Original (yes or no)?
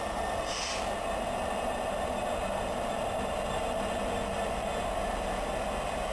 yes